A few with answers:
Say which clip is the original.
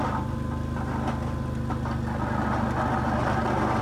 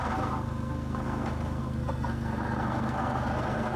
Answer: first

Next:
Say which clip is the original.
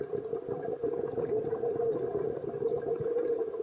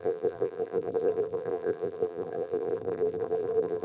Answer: first